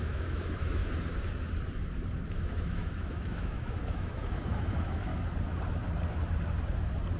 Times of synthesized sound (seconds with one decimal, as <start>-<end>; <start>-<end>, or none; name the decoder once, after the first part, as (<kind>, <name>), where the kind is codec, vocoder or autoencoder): 0.0-0.8 (autoencoder, DAC-VAE); 2.3-5.1

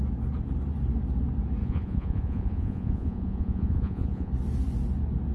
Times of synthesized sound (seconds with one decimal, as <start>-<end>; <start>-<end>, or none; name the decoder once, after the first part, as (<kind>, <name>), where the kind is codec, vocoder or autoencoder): 1.6-4.3 (vocoder, Vocos)

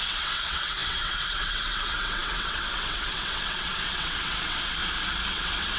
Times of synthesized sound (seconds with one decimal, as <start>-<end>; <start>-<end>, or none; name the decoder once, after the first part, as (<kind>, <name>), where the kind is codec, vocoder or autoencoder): 0.0-4.8 (vocoder, WaveNeXt); 5.3-5.8

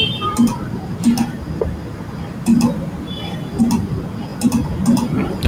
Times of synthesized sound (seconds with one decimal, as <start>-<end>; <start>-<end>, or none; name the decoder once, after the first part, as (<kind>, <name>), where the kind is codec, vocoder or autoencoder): 0.0-5.5 (vocoder, BigVGAN v2)

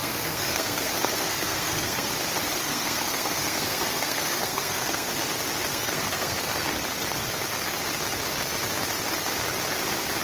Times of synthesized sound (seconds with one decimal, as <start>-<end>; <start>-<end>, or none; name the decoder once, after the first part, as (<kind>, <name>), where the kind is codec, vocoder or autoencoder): 0.0-2.1 (codec, SNAC); 2.6-5.1; 5.7-6.7

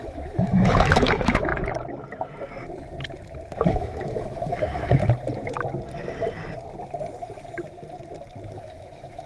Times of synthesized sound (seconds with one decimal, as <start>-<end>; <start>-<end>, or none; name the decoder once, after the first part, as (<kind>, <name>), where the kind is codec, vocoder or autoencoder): 0.0-1.5 (autoencoder, DAC-VAE); 3.7-5.0; 8.5-9.3

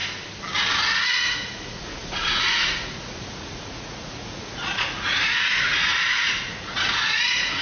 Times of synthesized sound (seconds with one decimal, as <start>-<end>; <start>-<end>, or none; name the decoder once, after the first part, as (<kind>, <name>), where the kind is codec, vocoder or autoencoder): 1.0-7.6 (vocoder, Vocos)

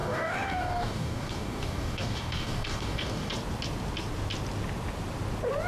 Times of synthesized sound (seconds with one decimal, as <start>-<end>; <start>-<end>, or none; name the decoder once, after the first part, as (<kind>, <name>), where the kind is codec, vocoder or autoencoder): 0.0-3.3 (codec, DAC)